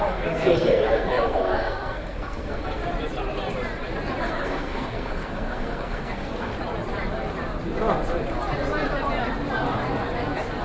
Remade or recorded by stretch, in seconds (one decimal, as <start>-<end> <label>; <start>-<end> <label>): 0.0-2.8 remade; 2.8-4.2 recorded; 4.2-6.5 remade; 6.5-10.6 recorded